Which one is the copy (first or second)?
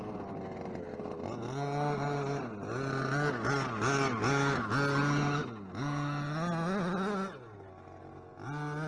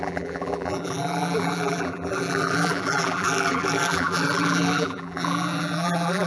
second